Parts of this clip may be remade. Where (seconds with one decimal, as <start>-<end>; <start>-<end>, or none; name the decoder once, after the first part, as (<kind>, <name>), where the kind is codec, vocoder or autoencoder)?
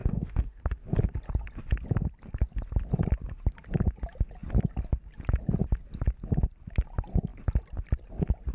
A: 0.0-0.6 (autoencoder, DAC-VAE)